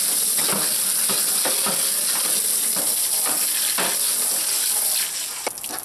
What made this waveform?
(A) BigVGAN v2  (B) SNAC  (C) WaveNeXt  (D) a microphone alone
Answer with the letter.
D